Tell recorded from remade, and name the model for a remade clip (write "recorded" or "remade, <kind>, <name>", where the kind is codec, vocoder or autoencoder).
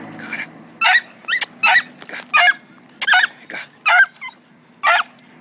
recorded